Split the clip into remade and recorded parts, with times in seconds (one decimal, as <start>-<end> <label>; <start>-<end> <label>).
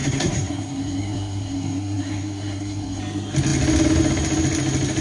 0.0-3.0 remade; 3.0-5.0 recorded